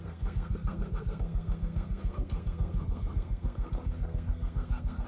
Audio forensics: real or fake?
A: fake